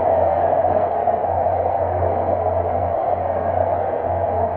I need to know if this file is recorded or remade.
remade